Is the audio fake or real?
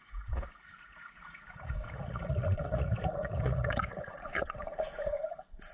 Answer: fake